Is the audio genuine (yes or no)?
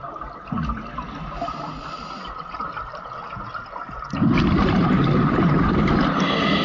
yes